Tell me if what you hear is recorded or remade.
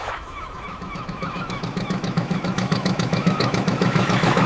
remade